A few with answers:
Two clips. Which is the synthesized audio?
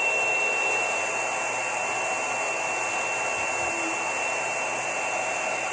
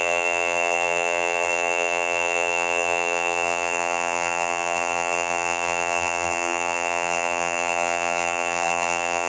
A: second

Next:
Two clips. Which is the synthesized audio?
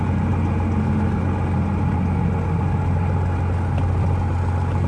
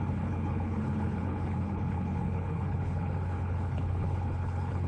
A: second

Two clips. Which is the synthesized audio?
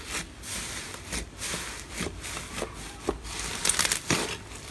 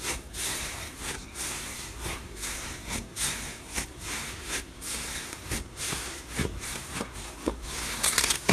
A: second